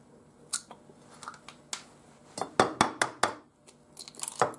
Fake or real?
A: real